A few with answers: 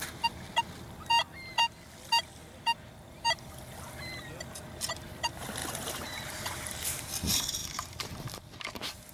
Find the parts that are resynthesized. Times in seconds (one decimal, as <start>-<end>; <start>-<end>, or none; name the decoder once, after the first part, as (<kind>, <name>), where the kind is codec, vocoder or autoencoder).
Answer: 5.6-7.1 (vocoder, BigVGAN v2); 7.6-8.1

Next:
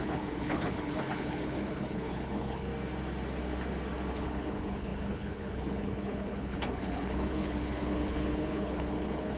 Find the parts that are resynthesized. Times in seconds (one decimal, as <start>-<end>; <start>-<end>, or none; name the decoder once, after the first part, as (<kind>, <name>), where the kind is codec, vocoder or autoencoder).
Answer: 0.0-2.7 (codec, HILCodec); 4.1-9.4

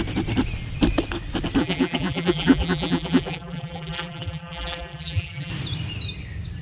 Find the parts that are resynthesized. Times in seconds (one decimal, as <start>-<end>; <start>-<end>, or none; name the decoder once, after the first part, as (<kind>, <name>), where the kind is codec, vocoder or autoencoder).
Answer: 1.6-5.5 (vocoder, BigVGAN v2)

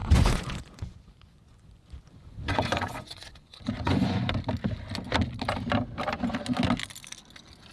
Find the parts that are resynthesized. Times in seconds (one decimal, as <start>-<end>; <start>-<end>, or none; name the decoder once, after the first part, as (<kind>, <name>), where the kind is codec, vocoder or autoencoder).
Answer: 0.0-4.2 (vocoder, Vocos)